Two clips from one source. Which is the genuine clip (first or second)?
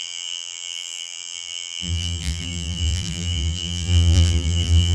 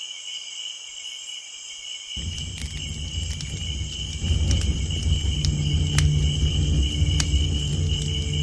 second